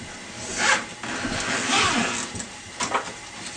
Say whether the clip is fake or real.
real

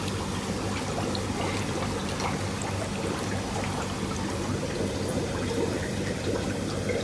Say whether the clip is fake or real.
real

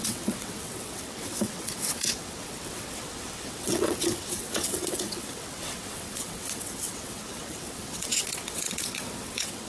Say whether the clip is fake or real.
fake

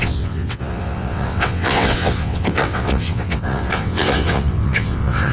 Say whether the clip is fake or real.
fake